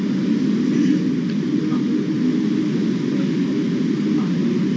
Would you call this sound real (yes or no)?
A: yes